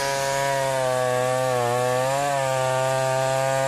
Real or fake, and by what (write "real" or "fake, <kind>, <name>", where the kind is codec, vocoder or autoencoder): real